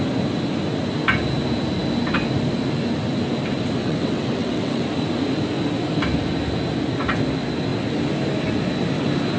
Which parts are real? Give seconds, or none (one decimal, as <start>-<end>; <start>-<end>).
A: 0.0-3.8; 4.8-9.4